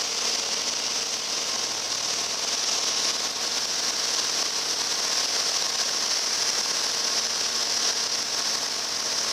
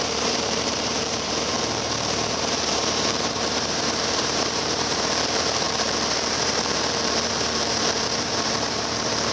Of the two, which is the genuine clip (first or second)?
first